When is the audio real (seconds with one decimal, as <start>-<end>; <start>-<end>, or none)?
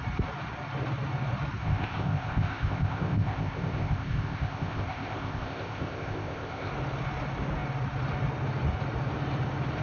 0.0-1.6; 6.7-9.8